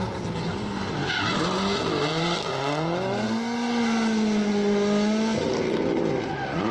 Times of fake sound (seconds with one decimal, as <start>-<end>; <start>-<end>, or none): none